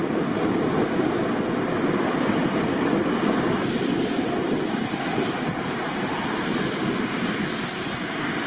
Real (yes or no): yes